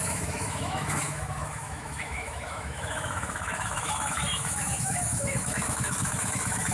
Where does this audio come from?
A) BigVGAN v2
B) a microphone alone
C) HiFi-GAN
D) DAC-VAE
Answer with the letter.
D